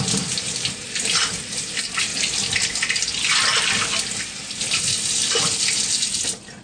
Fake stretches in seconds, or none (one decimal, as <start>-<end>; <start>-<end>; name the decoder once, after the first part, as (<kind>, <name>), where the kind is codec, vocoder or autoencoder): none

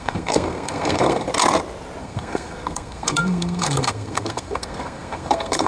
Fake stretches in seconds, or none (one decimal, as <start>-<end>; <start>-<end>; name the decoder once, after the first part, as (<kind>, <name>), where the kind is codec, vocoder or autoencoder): 0.0-1.3 (codec, SNAC); 2.0-5.7

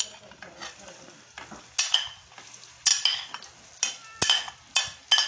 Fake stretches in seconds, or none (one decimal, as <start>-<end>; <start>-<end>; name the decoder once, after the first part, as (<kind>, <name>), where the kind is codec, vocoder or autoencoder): none

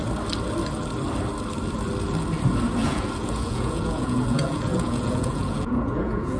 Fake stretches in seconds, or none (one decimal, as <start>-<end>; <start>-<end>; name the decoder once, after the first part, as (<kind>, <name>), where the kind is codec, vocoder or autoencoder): 2.8-6.4 (vocoder, Vocos)

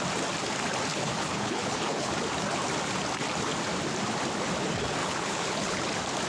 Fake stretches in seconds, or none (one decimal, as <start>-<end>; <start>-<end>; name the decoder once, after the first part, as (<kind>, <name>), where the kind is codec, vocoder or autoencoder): 0.9-2.1 (codec, HILCodec); 5.0-5.8

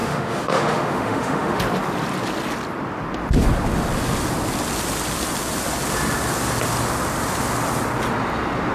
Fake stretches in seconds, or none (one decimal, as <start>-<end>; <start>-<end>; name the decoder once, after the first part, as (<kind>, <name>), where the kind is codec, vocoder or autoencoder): 0.0-1.6 (autoencoder, DAC-VAE)

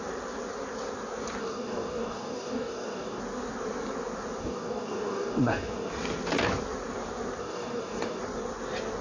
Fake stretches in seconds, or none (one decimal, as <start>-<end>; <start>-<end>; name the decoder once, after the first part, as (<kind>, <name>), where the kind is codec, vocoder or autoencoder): 1.4-3.2 (codec, DAC); 4.4-5.9; 7.4-8.2

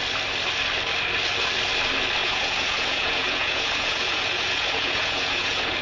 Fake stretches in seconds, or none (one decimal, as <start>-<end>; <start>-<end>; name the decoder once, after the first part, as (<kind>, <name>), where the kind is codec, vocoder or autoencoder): 2.2-5.8 (vocoder, Vocos)